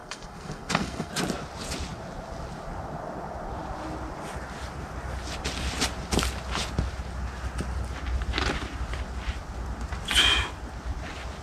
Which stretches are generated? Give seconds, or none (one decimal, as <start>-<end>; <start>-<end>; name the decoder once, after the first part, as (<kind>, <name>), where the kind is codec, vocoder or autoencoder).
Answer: 0.0-1.1 (codec, SNAC)